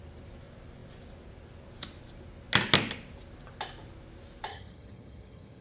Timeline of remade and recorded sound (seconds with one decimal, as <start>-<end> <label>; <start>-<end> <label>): 0.0-4.5 recorded; 4.5-5.6 remade

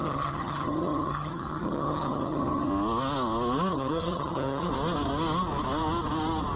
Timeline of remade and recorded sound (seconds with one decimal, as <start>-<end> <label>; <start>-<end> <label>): 0.0-2.7 remade; 2.7-3.7 recorded; 3.7-4.7 remade; 4.7-6.6 recorded

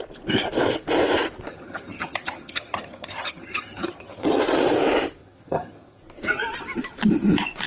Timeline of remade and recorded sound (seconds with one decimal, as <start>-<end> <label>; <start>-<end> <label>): 0.0-1.5 recorded; 1.5-4.4 remade; 4.4-5.2 recorded; 5.2-6.0 remade; 6.0-7.7 recorded

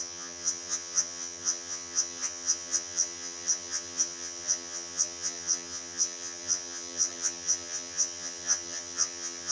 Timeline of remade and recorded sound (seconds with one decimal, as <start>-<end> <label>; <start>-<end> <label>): 0.0-9.5 remade

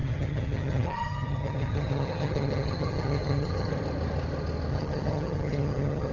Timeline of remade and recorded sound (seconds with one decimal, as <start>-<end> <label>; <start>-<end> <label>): 0.0-3.7 remade; 3.7-4.7 recorded; 4.7-6.1 remade

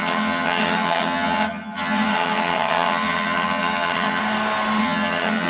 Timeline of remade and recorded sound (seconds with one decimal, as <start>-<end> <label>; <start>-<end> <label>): 0.0-4.2 remade; 4.2-4.8 recorded; 4.8-5.5 remade

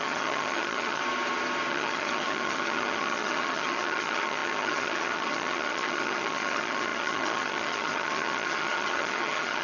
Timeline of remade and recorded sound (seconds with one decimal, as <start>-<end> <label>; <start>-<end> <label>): 0.0-1.0 remade; 1.0-1.7 recorded; 1.7-9.6 remade